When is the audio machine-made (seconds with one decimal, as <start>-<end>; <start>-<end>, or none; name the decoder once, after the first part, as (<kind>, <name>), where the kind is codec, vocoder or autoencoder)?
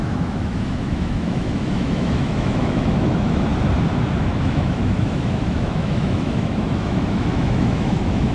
0.0-3.5 (autoencoder, DAC-VAE); 4.2-8.3